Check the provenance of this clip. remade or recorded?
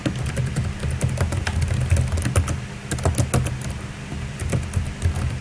recorded